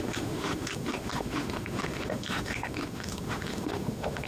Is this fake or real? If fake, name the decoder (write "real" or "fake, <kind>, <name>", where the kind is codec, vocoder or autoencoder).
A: fake, autoencoder, DAC-VAE